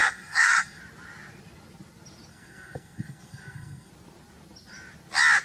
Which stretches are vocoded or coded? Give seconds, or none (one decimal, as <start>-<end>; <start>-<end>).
0.0-0.8; 2.3-3.9